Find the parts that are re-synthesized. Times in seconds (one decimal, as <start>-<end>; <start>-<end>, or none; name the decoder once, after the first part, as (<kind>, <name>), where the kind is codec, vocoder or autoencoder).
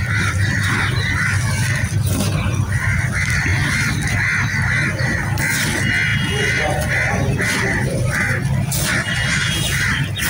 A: none